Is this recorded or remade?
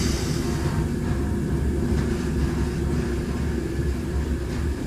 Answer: recorded